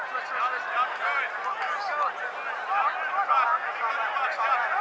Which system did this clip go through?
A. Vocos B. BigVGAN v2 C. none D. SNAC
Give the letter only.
C